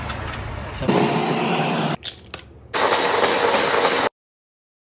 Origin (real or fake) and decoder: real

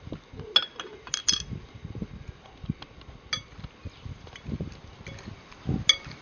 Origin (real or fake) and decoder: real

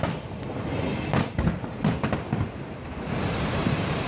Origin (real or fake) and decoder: real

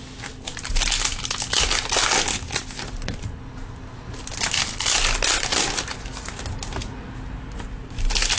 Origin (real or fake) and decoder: real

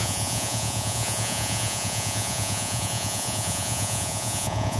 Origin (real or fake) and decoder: fake, vocoder, Vocos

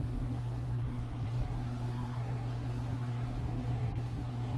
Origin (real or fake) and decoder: fake, codec, SNAC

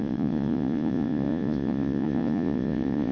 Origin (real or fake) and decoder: fake, vocoder, Vocos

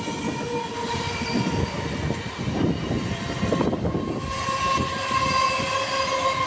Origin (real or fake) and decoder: real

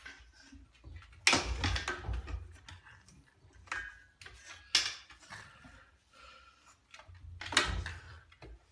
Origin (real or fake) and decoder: real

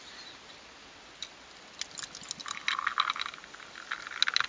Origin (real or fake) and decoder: real